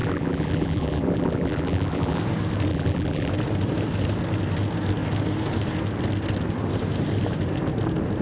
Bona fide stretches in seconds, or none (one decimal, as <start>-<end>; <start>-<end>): 2.2-2.7; 3.3-8.2